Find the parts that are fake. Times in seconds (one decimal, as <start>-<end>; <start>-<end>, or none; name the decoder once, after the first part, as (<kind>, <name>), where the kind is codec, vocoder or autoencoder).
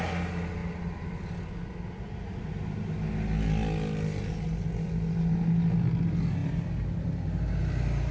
none